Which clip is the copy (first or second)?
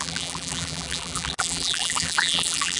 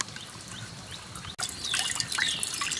first